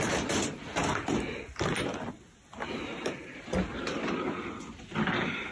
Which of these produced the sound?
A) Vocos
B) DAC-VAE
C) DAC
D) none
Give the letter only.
D